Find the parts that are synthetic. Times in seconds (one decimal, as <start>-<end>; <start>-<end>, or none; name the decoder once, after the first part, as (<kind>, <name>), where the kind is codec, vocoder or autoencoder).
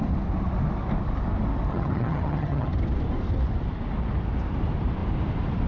1.7-2.7 (vocoder, HiFi-GAN)